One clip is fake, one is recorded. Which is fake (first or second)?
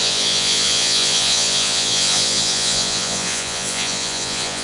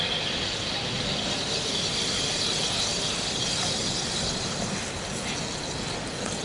first